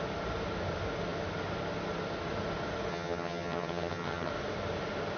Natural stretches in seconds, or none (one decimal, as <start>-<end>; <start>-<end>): 0.0-2.9; 4.3-5.2

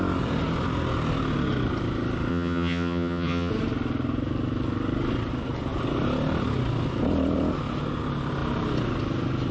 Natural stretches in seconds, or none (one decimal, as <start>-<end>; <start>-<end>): 0.0-2.3; 3.5-9.5